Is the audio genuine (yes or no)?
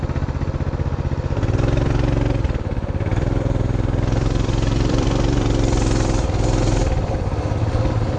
no